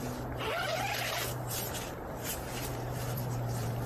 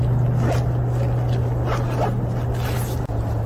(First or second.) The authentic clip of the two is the second